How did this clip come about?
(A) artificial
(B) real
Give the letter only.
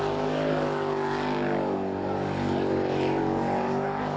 A